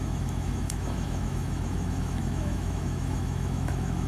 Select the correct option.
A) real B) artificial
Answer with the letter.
B